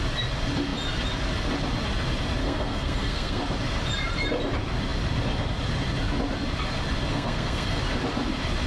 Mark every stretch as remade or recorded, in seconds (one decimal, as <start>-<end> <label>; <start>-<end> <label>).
0.0-2.4 recorded; 2.4-3.4 remade; 3.4-7.1 recorded; 7.1-7.8 remade; 7.8-8.7 recorded

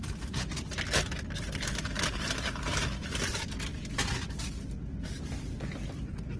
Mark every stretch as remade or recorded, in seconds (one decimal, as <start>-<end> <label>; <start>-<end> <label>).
0.0-6.4 recorded

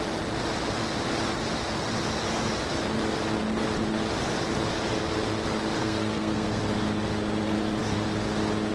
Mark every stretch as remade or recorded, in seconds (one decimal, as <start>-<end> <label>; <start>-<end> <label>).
0.0-5.8 recorded; 5.8-6.6 remade; 6.6-8.7 recorded

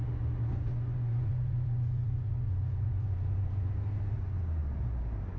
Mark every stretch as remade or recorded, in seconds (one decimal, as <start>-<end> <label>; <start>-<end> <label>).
0.0-0.5 recorded; 0.5-3.7 remade; 3.7-5.4 recorded

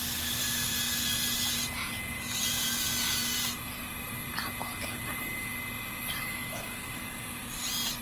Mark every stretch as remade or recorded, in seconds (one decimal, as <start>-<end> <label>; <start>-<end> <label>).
0.0-6.2 recorded; 6.2-7.0 remade; 7.0-8.0 recorded

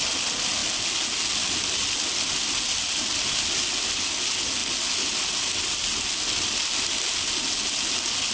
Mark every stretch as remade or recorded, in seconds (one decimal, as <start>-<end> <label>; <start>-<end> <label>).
0.0-8.3 recorded